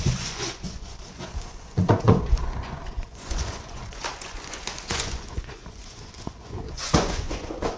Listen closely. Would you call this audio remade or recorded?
remade